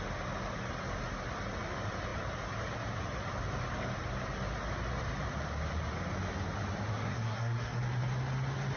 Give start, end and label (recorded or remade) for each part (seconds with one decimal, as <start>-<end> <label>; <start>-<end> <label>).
0.0-6.9 recorded; 6.9-7.8 remade; 7.8-8.8 recorded